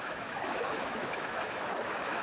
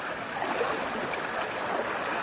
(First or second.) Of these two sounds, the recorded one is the second